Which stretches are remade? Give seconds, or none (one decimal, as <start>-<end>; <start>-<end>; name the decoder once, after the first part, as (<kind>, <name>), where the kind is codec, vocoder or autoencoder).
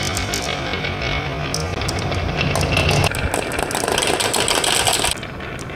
none